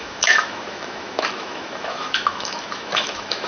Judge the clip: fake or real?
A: fake